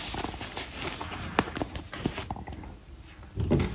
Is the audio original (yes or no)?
yes